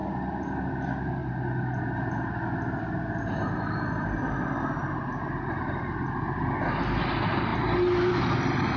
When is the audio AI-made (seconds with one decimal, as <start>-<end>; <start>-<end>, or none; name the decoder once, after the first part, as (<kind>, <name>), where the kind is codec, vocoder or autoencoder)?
0.0-1.2 (vocoder, BigVGAN v2); 5.6-8.8